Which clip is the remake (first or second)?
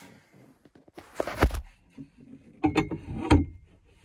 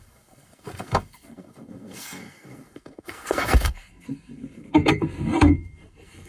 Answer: second